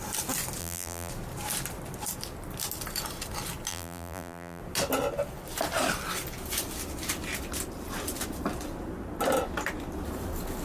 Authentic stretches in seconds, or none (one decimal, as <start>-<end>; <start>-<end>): 0.0-0.6; 1.1-3.7; 4.6-10.6